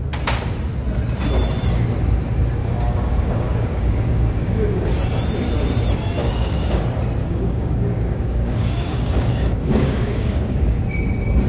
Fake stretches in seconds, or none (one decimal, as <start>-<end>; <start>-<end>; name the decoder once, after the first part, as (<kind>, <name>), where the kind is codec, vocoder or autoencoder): 2.6-4.9 (codec, DAC); 6.2-6.8; 7.2-10.8